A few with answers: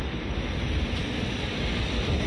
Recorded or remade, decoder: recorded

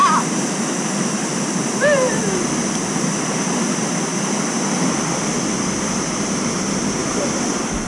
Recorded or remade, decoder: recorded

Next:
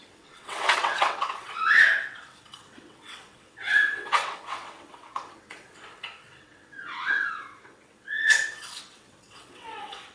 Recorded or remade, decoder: remade, vocoder, WaveNeXt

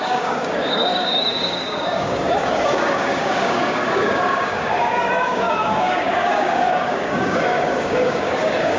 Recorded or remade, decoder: remade, codec, DAC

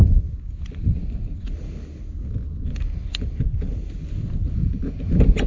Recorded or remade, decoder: recorded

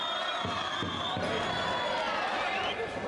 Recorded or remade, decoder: recorded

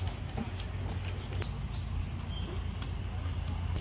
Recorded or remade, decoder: recorded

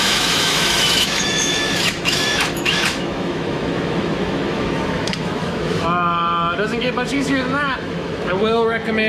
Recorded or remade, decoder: remade, autoencoder, DAC-VAE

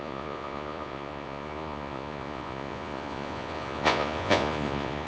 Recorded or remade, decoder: remade, vocoder, Vocos